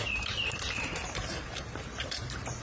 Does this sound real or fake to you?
fake